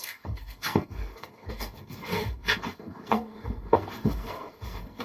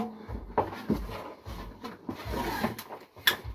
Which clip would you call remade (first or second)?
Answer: first